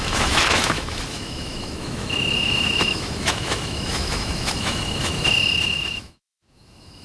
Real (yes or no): no